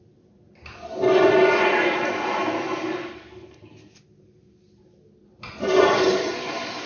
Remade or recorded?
recorded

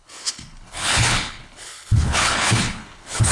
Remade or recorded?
remade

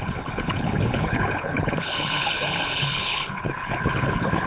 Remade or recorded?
remade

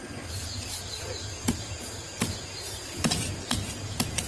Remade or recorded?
recorded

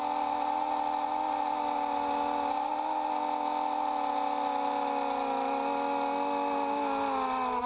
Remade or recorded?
recorded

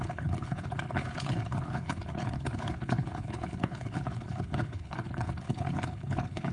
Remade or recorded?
remade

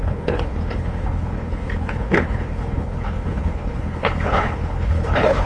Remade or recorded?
remade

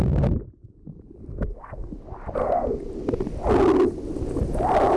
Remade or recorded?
recorded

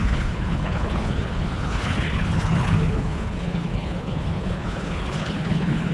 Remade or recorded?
remade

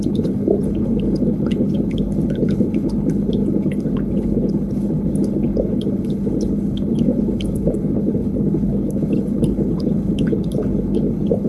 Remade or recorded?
remade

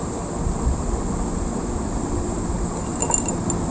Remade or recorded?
recorded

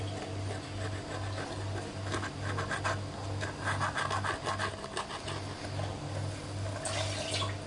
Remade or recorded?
recorded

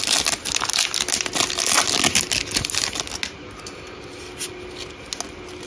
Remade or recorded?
recorded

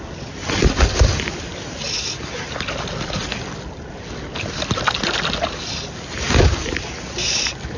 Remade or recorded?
recorded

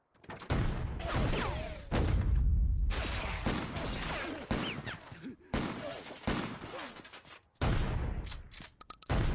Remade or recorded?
recorded